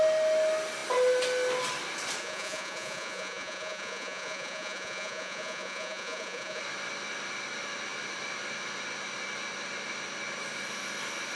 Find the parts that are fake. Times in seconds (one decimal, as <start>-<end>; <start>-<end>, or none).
2.2-6.6